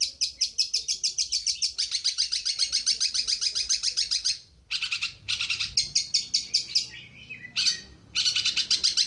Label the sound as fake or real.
real